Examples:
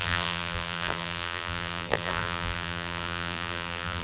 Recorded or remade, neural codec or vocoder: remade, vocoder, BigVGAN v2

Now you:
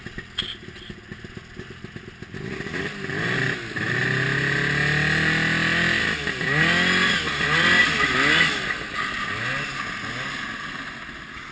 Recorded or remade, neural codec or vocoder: recorded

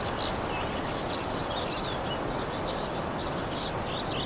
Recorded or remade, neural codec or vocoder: recorded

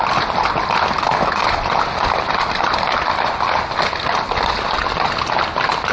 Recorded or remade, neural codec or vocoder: recorded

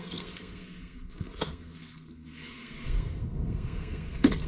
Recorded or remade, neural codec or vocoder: remade, codec, SNAC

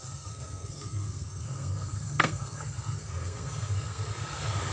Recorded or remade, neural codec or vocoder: remade, codec, SNAC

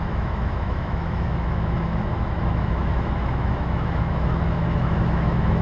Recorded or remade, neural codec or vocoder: remade, autoencoder, DAC-VAE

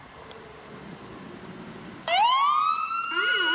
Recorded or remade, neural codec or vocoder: recorded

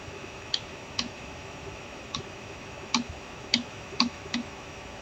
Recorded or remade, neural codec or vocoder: remade, autoencoder, DAC-VAE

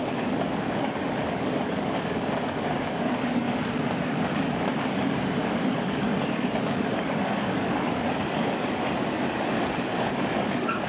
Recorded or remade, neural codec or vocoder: remade, codec, DAC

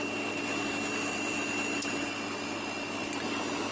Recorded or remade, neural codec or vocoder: recorded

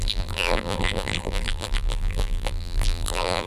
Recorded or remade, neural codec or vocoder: remade, vocoder, BigVGAN v2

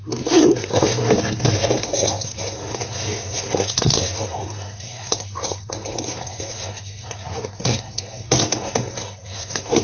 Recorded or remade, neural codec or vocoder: remade, codec, SNAC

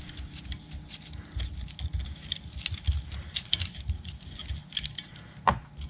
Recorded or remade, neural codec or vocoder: recorded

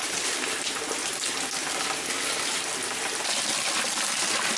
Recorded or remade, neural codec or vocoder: recorded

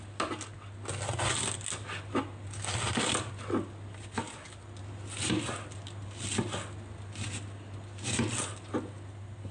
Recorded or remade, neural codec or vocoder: recorded